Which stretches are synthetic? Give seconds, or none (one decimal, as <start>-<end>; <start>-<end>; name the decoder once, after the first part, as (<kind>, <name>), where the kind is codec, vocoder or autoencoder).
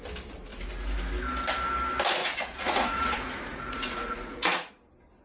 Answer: 2.2-4.7 (vocoder, Vocos)